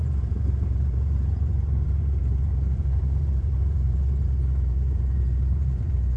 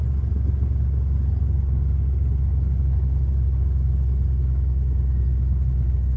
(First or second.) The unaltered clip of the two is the second